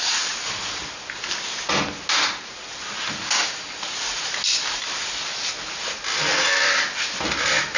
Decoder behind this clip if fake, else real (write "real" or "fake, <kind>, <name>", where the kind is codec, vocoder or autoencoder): real